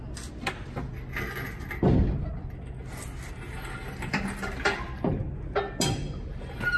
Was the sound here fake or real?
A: real